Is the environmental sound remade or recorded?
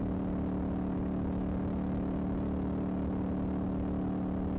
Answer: recorded